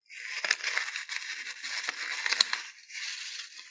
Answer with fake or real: real